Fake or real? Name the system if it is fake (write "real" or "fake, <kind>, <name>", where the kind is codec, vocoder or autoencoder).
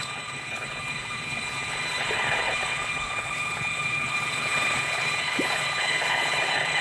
fake, codec, HILCodec